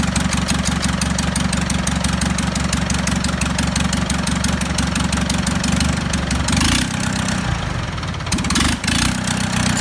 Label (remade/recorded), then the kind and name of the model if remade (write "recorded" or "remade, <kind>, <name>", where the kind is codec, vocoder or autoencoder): recorded